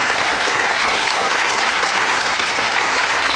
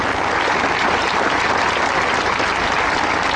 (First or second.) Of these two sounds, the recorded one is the second